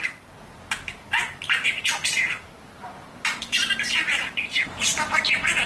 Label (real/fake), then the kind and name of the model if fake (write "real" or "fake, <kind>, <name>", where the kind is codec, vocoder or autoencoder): fake, vocoder, BigVGAN v2